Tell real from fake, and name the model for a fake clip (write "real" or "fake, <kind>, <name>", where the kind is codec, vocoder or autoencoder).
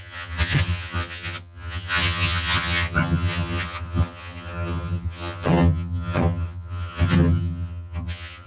fake, vocoder, HiFi-GAN